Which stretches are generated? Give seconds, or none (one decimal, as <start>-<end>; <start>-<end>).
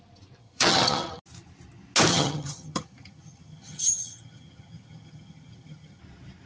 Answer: 0.4-1.2; 2.1-6.0